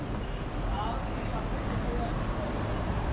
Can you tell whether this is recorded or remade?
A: recorded